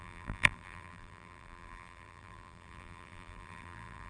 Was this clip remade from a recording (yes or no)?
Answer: yes